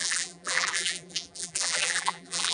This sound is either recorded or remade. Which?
remade